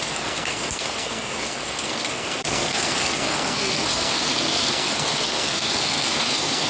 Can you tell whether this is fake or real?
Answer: fake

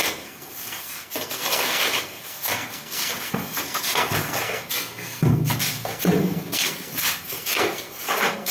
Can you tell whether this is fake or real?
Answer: fake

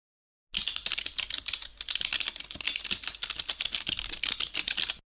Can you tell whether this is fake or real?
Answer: real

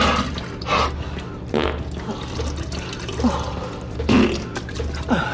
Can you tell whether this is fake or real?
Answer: real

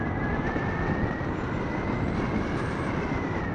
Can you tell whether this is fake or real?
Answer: real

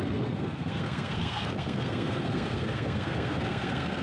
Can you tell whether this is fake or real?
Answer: fake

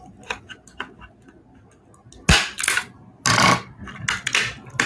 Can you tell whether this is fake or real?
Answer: real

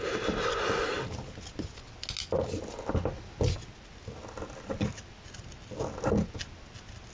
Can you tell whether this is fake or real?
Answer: real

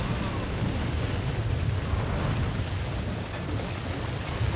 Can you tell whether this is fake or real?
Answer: real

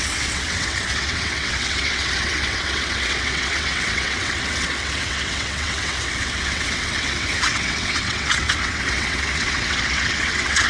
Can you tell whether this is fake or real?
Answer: fake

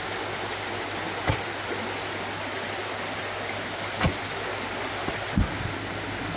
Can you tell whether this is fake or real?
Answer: real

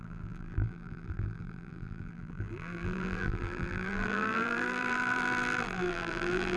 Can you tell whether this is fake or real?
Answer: fake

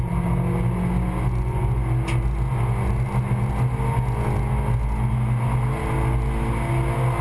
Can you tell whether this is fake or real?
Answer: real